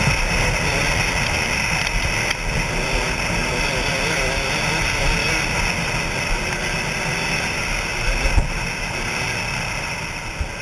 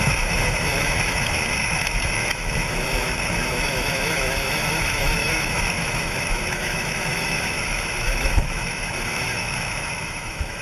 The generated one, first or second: second